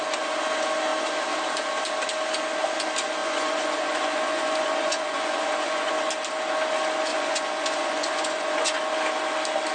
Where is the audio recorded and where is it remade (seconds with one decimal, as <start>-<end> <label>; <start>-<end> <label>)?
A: 0.0-3.2 recorded; 3.2-5.9 remade; 5.9-7.1 recorded; 7.1-8.8 remade; 8.8-9.7 recorded